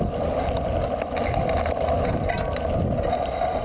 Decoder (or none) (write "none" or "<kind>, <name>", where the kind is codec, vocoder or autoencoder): none